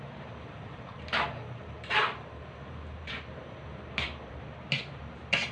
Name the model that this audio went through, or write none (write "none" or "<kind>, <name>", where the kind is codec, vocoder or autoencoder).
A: vocoder, BigVGAN v2